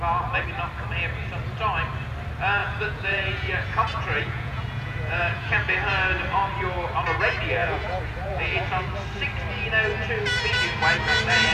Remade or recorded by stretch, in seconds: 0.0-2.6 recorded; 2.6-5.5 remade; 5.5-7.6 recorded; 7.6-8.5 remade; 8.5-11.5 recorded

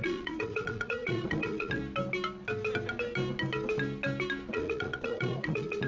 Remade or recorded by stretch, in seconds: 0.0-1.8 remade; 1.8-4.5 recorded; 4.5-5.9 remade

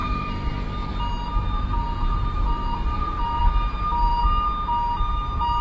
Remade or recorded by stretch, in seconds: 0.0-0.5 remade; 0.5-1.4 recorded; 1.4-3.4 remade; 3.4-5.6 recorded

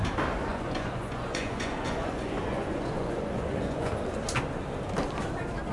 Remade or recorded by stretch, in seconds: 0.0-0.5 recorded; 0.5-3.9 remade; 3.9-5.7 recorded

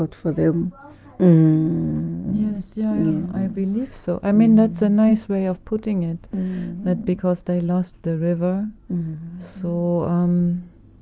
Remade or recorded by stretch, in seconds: 0.0-7.0 recorded; 7.0-9.4 remade; 9.4-11.0 recorded

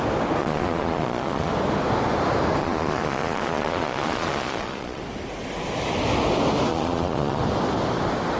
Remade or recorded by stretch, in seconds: 0.0-0.4 recorded; 0.4-1.5 remade; 1.5-2.6 recorded; 2.6-5.0 remade; 5.0-6.7 recorded; 6.7-7.4 remade; 7.4-8.4 recorded

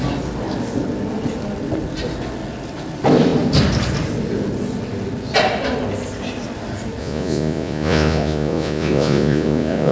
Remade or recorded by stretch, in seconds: 0.0-7.0 recorded; 7.0-9.9 remade

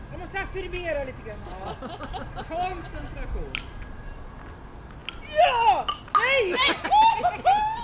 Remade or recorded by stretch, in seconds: 0.0-7.8 recorded